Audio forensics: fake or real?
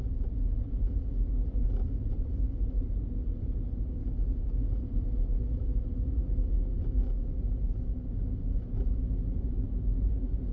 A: real